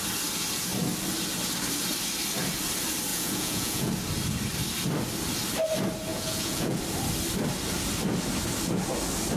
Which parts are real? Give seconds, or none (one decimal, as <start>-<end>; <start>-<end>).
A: 0.0-3.1; 3.9-6.1; 6.8-9.4